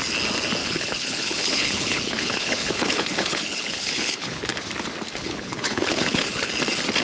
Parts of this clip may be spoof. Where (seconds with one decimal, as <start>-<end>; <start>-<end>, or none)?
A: 0.6-4.4; 5.2-6.5